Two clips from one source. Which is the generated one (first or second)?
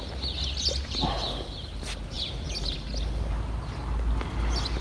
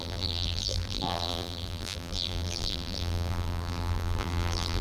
second